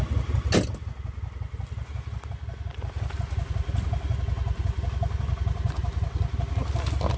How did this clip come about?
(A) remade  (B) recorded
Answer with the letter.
B